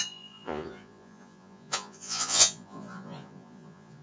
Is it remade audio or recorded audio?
remade